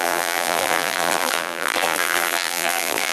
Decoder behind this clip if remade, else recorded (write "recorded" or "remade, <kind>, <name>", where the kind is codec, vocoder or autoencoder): remade, vocoder, BigVGAN v2